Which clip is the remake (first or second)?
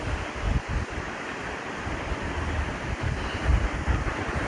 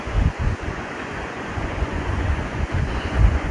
second